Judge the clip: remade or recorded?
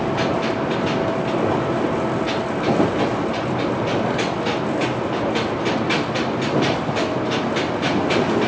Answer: recorded